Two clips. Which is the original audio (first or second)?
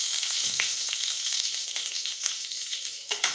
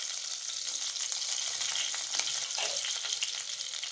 second